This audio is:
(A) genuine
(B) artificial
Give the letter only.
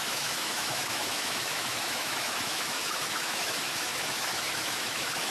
B